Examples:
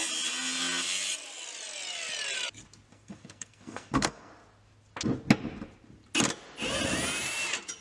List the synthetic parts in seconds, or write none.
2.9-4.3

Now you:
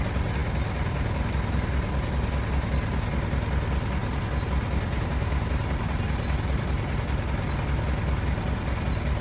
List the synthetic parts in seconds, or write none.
none

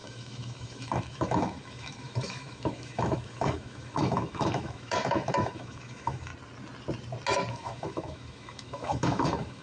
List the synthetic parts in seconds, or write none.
0.0-6.3; 7.5-9.6

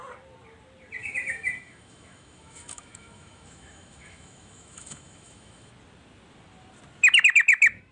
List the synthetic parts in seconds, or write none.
1.0-5.7

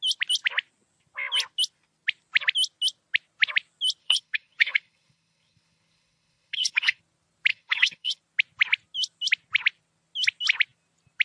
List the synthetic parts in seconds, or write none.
4.0-7.0; 7.5-8.2

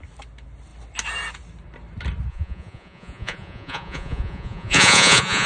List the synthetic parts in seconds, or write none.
2.3-5.5

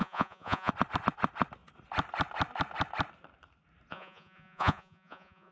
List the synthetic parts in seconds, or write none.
0.0-0.7; 3.9-5.5

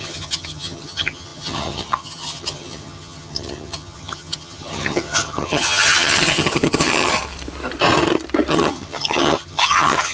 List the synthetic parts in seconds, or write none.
0.0-7.1; 8.5-10.1